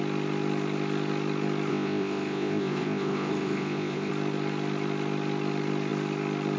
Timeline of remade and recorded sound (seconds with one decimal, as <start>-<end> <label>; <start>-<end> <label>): 0.0-1.7 recorded; 1.7-4.1 remade; 4.1-6.6 recorded